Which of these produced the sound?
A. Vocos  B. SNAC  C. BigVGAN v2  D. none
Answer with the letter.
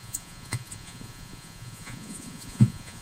A